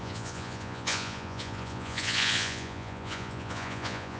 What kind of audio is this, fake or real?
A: fake